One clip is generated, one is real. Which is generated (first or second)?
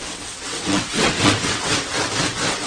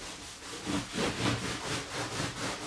first